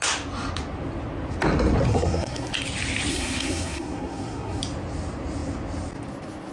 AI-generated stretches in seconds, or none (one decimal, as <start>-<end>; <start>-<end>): 1.9-2.5; 3.1-4.6